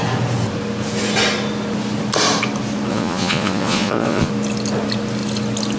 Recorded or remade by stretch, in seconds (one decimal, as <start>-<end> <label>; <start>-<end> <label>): 0.0-2.9 recorded; 2.9-4.3 remade; 4.3-5.8 recorded